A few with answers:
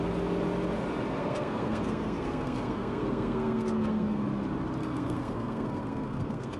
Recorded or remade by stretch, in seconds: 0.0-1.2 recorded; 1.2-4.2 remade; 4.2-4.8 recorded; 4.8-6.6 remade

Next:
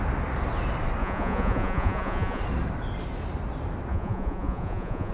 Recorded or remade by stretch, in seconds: 0.0-1.0 recorded; 1.0-2.4 remade; 2.4-3.9 recorded; 3.9-5.1 remade

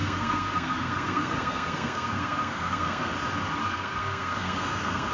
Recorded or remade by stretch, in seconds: 0.0-3.1 remade; 3.1-3.6 recorded; 3.6-5.1 remade

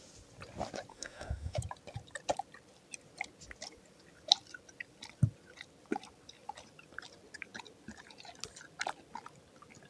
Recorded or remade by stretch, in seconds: 0.0-0.9 recorded; 0.9-1.6 remade; 1.6-9.9 recorded

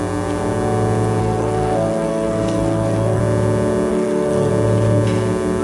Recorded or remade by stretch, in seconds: 0.0-1.2 recorded; 1.2-3.2 remade; 3.2-3.9 recorded; 3.9-4.5 remade; 4.5-5.6 recorded

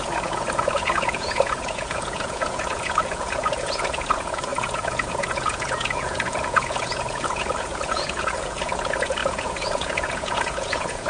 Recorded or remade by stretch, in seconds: 0.0-11.1 remade